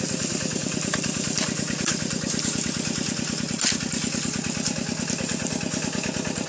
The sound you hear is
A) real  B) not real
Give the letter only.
A